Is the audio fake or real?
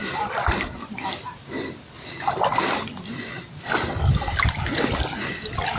real